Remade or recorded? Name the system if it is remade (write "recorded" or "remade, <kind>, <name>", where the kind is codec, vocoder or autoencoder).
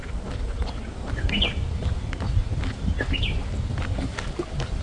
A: recorded